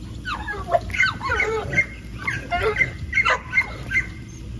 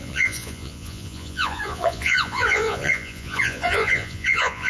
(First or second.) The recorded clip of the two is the first